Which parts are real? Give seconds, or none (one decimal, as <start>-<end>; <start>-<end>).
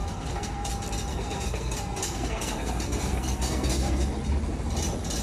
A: 0.7-1.1; 4.1-5.2